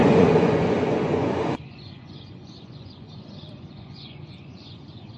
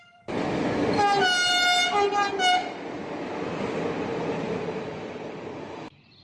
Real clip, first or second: second